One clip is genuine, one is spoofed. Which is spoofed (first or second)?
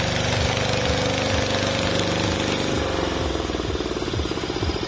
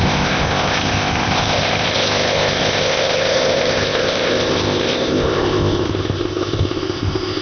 second